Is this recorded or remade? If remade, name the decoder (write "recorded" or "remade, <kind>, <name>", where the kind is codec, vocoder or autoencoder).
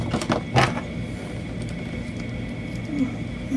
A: recorded